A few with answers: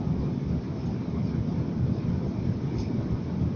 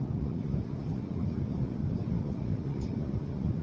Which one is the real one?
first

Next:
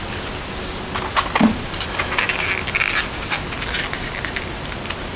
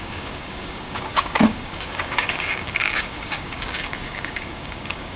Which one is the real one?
first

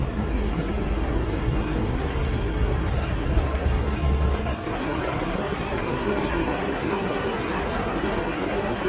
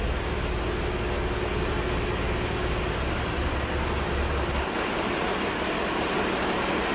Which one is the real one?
second